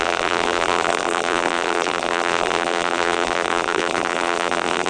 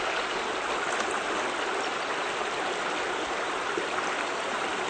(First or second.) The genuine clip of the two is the second